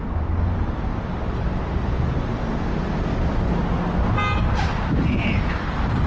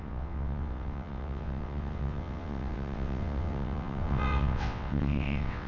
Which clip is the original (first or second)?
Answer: first